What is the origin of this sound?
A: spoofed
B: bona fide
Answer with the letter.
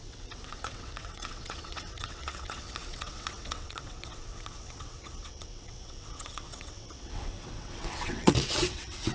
A